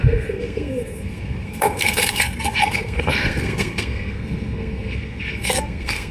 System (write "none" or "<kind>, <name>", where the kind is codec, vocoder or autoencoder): codec, SNAC